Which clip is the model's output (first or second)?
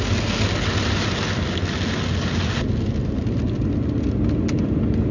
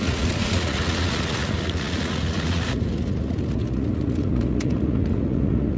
second